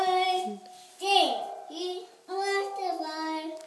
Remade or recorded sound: recorded